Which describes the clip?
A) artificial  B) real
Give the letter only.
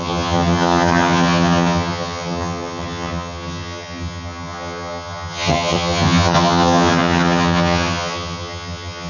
A